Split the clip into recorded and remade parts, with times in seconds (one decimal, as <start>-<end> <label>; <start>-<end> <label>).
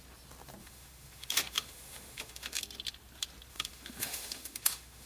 0.0-0.6 recorded; 0.6-2.6 remade; 2.6-3.5 recorded; 3.5-5.1 remade